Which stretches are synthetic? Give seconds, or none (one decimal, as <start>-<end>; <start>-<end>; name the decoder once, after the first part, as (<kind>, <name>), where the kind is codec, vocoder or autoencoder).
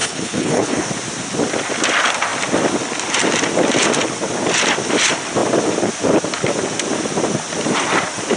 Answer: 0.0-0.9 (codec, HILCodec)